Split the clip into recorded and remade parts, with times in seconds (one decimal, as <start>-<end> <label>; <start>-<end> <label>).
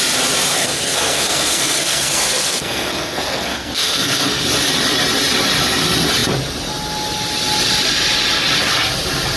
0.0-0.5 recorded; 0.5-4.4 remade; 4.4-9.4 recorded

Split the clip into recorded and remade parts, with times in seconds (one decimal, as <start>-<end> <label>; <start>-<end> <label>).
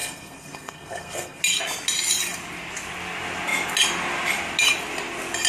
0.0-1.4 remade; 1.4-5.5 recorded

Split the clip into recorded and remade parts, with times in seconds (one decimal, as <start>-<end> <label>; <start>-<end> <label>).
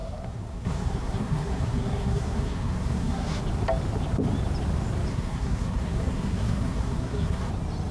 0.0-3.4 remade; 3.4-5.1 recorded; 5.1-7.5 remade; 7.5-7.9 recorded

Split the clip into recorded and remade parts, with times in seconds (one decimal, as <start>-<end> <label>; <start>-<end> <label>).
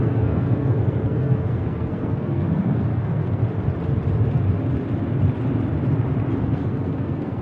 0.0-3.4 remade; 3.4-6.4 recorded; 6.4-7.4 remade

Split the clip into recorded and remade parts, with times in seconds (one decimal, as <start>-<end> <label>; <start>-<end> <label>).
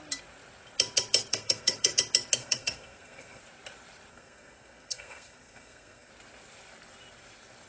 0.0-1.3 recorded; 1.3-1.9 remade; 1.9-2.4 recorded; 2.4-3.4 remade; 3.4-4.1 recorded; 4.1-6.1 remade; 6.1-7.7 recorded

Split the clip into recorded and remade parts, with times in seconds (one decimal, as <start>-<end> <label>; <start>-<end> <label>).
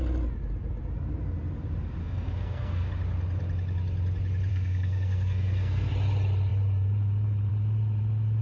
0.0-2.0 recorded; 2.0-2.9 remade; 2.9-4.5 recorded; 4.5-5.9 remade; 5.9-8.4 recorded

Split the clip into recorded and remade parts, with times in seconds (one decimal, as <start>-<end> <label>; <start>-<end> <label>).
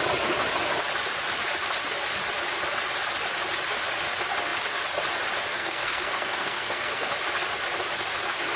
0.0-5.5 recorded; 5.5-7.1 remade; 7.1-8.6 recorded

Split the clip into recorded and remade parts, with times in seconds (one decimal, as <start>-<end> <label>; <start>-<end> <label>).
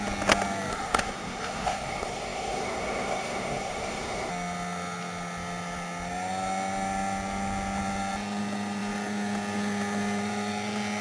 0.0-0.7 recorded; 0.7-4.3 remade; 4.3-11.0 recorded